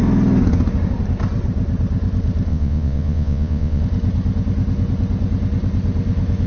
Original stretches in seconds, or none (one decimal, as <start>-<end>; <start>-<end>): 0.0-2.5; 3.8-6.5